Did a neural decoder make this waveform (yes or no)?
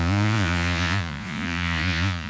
yes